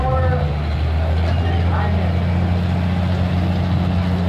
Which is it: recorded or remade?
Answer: recorded